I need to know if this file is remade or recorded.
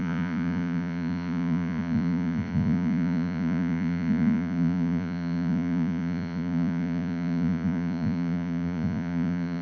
remade